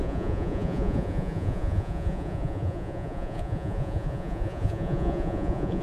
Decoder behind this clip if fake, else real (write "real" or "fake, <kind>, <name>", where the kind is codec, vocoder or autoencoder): fake, vocoder, Vocos